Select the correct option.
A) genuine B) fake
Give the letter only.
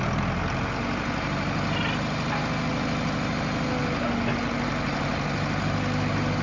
A